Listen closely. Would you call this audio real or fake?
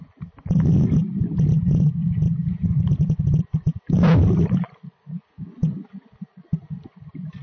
real